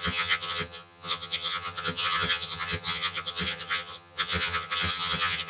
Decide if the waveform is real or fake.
fake